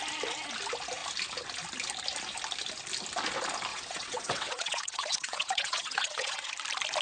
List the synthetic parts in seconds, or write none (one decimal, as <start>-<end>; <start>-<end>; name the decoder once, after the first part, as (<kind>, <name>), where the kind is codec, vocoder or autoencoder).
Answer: 3.7-6.5 (vocoder, WaveNeXt)